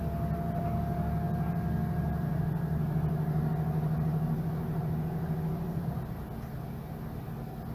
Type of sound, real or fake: real